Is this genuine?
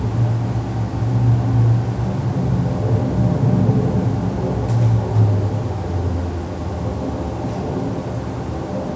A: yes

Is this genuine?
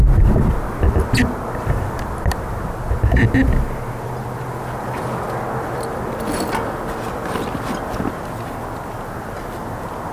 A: yes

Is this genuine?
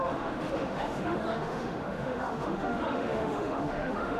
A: no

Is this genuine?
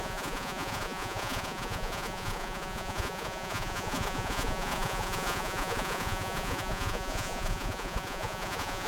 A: no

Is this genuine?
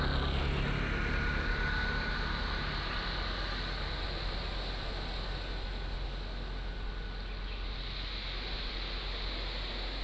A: yes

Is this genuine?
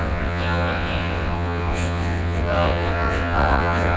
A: no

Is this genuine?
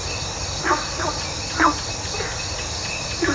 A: yes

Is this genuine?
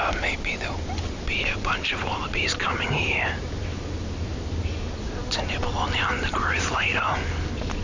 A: yes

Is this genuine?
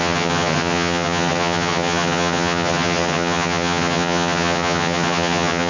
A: no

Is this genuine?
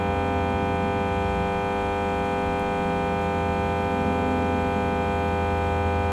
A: yes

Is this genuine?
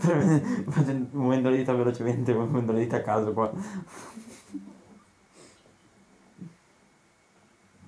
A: no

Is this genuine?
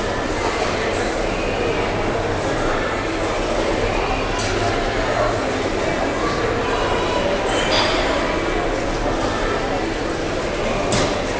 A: yes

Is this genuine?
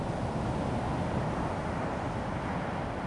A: yes